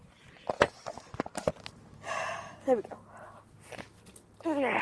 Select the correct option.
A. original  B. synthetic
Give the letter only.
A